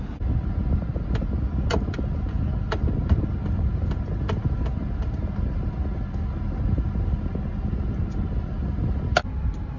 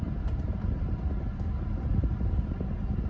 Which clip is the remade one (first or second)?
second